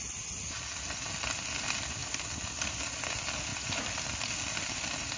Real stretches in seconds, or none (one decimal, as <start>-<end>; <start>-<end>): 0.0-5.2